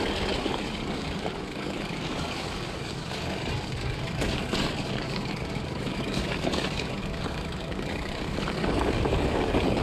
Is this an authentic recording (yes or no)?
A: no